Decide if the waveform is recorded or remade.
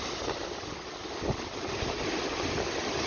recorded